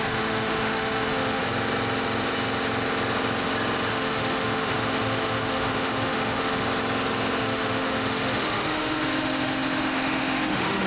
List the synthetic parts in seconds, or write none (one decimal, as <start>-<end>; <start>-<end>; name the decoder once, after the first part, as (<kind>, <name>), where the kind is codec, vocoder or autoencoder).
0.0-1.4 (autoencoder, DAC-VAE); 3.9-6.6; 7.4-10.9